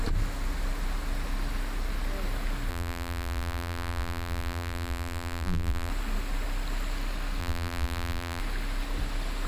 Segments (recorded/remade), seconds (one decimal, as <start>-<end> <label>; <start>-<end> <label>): 0.0-2.7 recorded; 2.7-5.9 remade; 5.9-7.4 recorded; 7.4-8.4 remade; 8.4-9.5 recorded